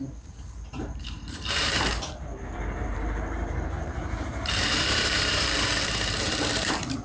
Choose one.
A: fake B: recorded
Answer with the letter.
A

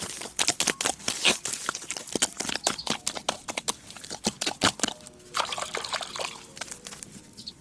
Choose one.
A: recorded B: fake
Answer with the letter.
B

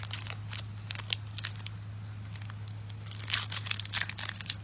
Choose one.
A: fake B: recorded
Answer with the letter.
B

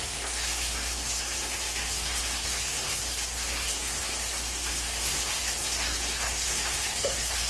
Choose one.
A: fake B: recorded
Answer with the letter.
A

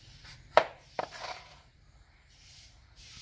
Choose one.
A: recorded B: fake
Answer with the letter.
B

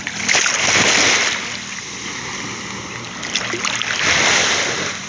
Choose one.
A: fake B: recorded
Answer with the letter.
B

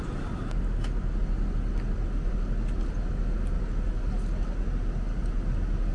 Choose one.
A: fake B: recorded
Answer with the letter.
B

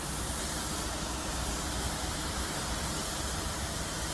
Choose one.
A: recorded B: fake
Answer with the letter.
B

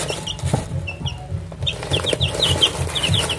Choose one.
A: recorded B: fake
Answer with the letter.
B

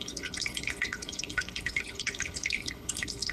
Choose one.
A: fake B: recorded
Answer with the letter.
A